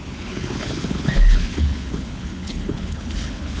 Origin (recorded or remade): remade